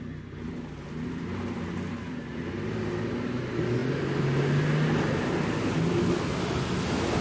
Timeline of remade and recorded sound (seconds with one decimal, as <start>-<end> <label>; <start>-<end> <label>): 0.0-7.2 recorded